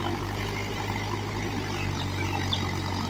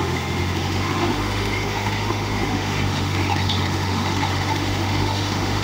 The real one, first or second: first